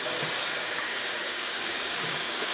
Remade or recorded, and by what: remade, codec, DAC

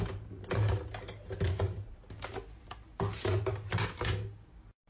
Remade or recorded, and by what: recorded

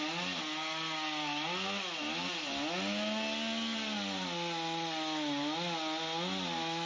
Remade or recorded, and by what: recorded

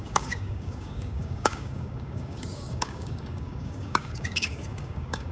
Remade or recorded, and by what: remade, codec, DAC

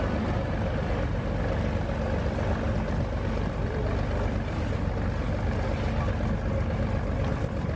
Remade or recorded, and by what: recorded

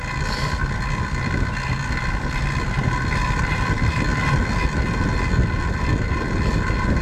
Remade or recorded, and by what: recorded